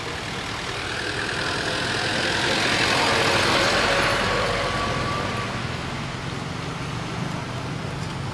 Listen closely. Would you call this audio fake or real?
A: real